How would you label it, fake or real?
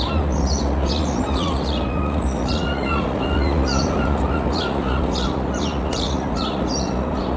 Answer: fake